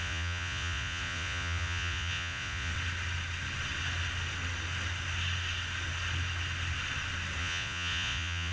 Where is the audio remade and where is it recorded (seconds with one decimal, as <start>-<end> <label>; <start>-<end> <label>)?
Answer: 0.0-2.7 remade; 2.7-7.4 recorded; 7.4-8.5 remade